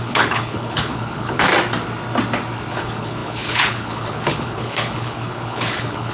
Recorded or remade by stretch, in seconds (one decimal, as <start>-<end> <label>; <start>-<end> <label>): 0.0-1.5 remade; 1.5-2.7 recorded; 2.7-6.1 remade